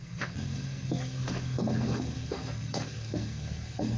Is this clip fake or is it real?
fake